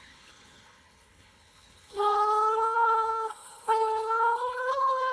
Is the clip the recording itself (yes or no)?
no